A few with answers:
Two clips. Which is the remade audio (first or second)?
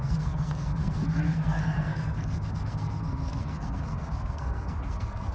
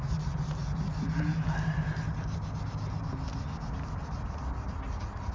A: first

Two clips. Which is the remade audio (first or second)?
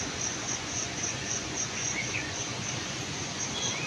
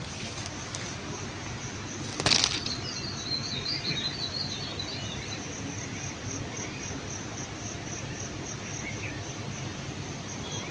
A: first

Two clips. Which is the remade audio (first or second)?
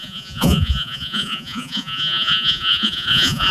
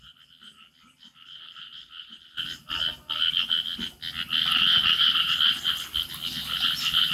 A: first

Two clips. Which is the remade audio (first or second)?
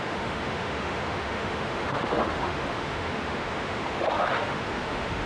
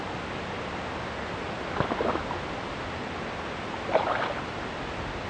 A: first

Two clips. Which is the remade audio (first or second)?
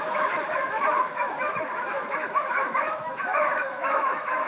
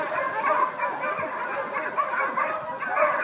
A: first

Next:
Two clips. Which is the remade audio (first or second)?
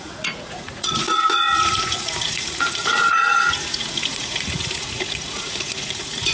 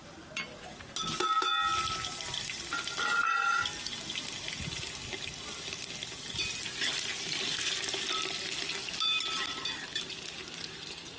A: first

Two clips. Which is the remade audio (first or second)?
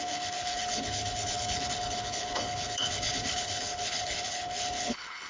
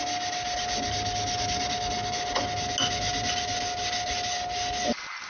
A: first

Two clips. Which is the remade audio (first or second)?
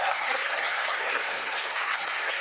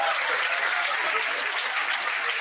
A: first